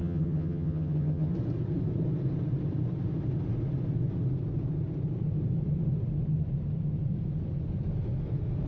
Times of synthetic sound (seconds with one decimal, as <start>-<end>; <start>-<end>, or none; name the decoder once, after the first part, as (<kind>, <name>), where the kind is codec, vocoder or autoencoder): 0.0-1.3 (vocoder, HiFi-GAN)